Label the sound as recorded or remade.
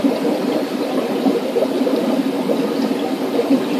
remade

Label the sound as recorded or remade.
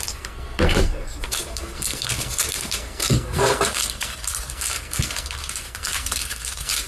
remade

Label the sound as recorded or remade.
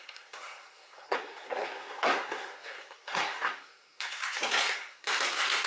remade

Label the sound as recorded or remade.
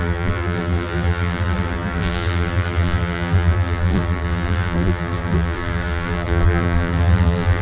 remade